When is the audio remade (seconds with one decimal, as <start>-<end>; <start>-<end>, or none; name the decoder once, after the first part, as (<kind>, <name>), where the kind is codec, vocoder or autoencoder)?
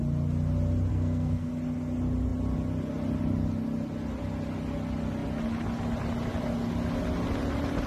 0.9-1.5 (codec, SNAC)